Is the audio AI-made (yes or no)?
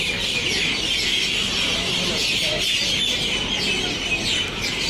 no